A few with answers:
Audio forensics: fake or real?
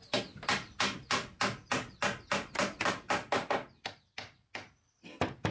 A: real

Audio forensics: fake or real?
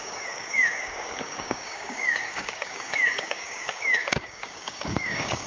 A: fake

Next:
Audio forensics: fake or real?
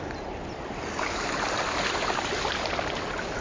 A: real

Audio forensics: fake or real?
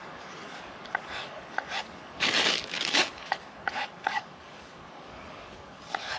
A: fake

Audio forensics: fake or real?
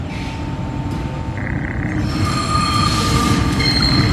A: real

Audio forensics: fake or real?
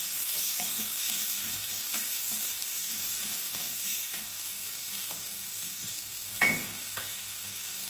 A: fake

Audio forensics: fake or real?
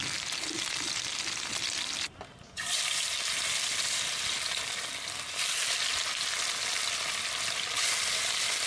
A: real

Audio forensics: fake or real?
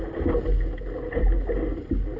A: real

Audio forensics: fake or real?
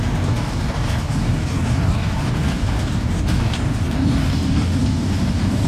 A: fake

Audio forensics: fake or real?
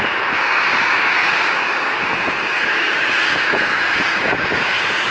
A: fake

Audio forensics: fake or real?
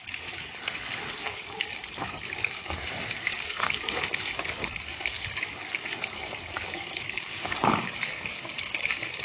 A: fake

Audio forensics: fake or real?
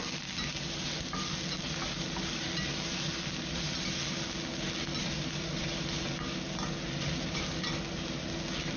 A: real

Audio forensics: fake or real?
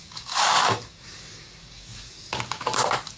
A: fake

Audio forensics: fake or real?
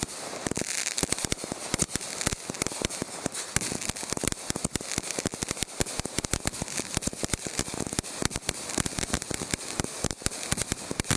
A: real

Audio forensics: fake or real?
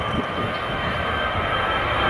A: real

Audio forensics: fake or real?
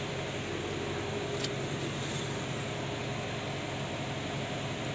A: real